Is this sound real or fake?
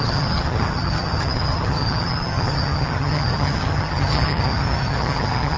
fake